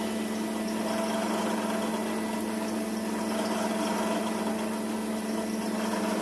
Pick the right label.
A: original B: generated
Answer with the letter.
A